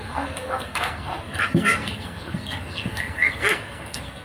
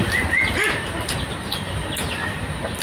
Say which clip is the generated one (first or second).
first